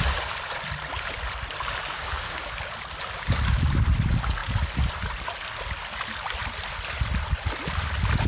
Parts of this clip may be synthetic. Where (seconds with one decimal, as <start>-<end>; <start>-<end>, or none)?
1.9-2.5